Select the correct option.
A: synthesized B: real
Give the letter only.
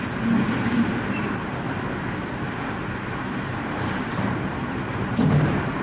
A